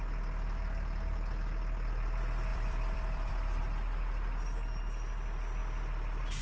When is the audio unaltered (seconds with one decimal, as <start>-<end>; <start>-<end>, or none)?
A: 0.0-2.5; 3.6-6.4